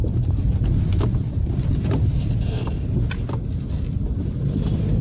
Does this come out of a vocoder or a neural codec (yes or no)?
yes